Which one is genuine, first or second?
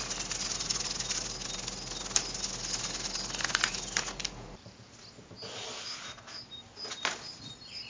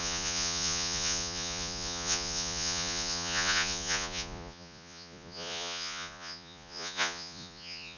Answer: first